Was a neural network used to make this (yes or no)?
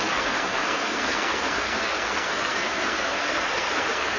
yes